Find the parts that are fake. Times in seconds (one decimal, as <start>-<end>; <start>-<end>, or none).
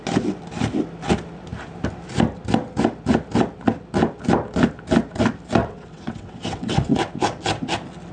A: 5.6-7.0